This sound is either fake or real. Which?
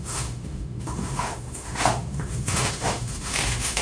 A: fake